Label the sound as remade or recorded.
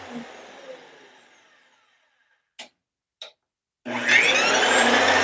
recorded